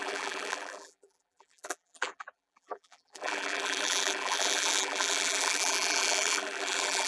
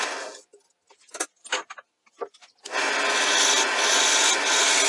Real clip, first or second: second